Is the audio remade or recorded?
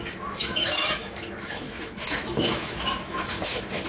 remade